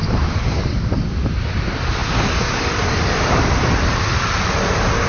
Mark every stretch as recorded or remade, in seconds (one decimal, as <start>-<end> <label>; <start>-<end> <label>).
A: 0.0-1.4 remade; 1.4-5.1 recorded